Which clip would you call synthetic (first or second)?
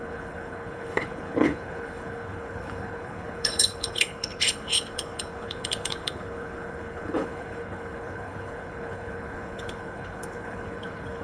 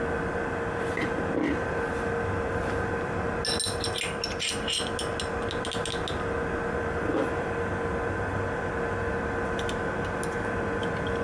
first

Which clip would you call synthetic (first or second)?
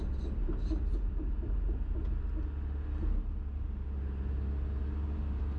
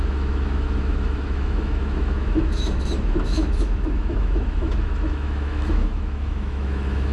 second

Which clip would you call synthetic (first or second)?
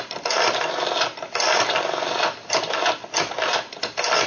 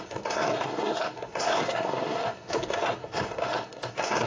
second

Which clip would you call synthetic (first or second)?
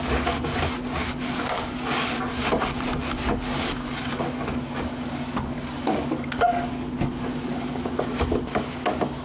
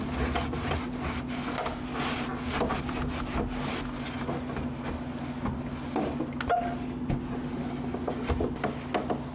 first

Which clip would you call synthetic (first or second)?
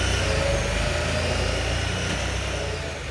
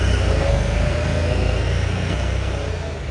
second